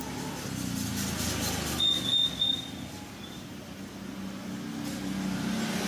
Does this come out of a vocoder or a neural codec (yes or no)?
no